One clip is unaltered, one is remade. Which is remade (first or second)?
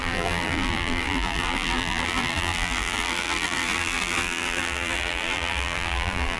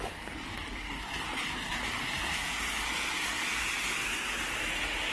first